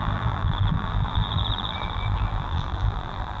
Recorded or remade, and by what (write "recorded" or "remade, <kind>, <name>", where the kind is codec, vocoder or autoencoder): remade, vocoder, BigVGAN v2